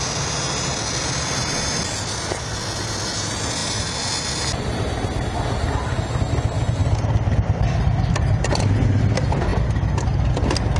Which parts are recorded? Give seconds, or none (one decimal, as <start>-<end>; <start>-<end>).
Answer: 0.0-10.8